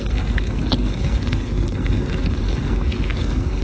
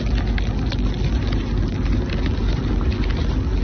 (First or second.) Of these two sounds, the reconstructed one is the first